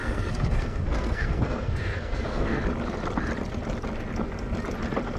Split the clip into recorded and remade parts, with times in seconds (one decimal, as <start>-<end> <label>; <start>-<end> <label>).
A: 0.0-2.6 remade; 2.6-5.2 recorded